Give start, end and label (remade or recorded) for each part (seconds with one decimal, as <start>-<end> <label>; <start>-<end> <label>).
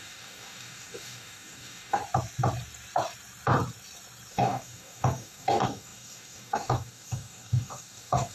0.0-2.0 remade; 2.0-4.3 recorded; 4.3-8.3 remade